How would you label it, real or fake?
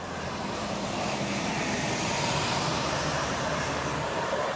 fake